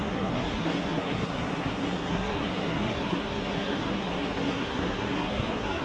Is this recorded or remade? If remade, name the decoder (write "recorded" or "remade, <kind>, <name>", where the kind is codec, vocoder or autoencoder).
remade, codec, SNAC